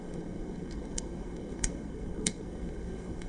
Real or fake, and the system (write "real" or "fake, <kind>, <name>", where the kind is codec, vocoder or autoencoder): fake, codec, SNAC